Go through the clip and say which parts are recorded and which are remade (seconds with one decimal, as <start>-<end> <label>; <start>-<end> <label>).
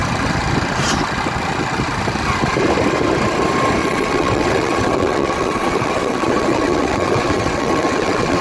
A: 0.0-3.8 recorded; 3.8-8.4 remade